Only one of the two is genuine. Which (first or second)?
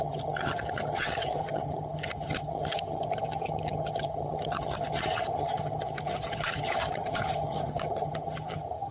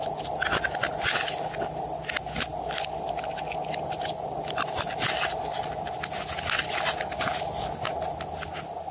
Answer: second